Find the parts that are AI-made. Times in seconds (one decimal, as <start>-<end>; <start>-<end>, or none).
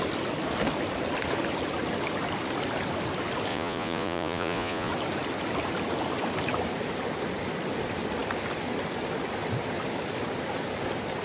3.5-4.9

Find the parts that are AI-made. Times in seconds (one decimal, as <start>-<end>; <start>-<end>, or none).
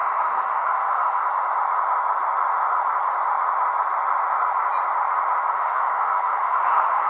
0.0-1.2; 5.5-7.1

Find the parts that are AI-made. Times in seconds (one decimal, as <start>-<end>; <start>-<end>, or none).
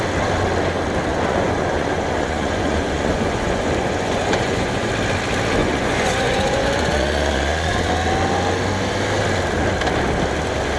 1.1-4.9; 5.6-7.9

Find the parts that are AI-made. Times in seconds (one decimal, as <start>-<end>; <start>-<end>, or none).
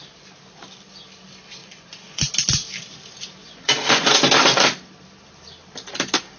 1.6-2.3; 3.4-4.2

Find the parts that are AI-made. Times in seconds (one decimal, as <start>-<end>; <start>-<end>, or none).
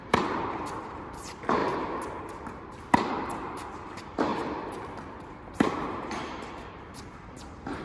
0.0-1.6; 3.1-4.3; 5.3-7.8